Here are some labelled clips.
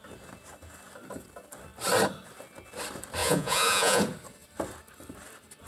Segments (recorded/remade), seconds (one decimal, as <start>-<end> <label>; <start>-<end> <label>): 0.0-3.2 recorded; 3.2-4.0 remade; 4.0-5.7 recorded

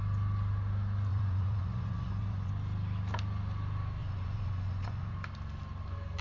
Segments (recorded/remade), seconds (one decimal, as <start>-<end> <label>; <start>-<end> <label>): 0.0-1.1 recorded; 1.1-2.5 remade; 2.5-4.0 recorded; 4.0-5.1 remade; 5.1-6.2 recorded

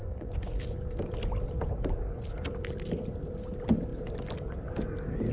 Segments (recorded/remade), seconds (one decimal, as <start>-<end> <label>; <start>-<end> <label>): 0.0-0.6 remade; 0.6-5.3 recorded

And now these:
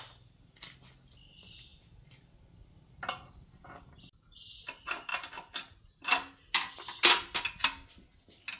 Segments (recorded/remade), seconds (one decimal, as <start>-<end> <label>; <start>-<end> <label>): 0.0-8.6 recorded